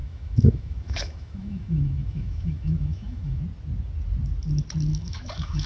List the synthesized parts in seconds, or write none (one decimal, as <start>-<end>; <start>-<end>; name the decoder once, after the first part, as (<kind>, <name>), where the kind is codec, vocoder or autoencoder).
0.0-3.4 (autoencoder, DAC-VAE); 4.9-5.7